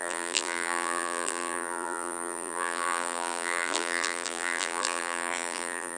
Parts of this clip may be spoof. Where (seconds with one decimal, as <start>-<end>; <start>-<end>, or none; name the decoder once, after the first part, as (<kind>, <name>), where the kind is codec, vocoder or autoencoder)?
0.0-6.0 (vocoder, BigVGAN v2)